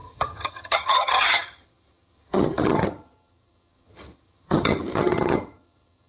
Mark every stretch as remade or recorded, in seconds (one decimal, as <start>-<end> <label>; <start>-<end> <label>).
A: 0.0-6.1 remade